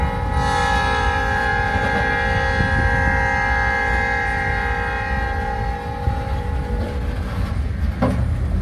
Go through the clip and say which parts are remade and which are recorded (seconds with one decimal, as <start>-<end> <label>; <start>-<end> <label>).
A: 0.0-8.6 recorded